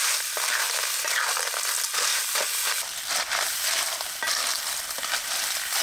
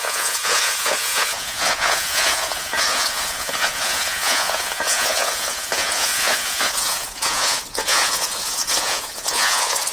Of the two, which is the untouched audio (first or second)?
first